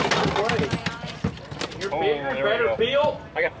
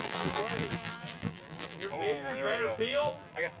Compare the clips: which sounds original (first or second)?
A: first